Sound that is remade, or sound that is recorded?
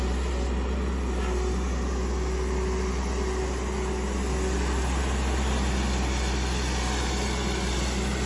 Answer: recorded